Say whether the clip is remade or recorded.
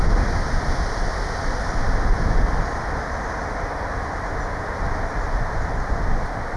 recorded